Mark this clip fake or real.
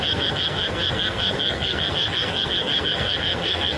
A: fake